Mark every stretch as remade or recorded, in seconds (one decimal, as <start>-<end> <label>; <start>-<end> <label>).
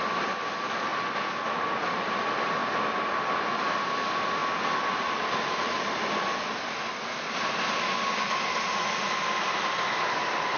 0.0-0.9 remade; 0.9-1.8 recorded; 1.8-2.6 remade; 2.6-3.1 recorded; 3.1-4.4 remade; 4.4-9.4 recorded; 9.4-10.6 remade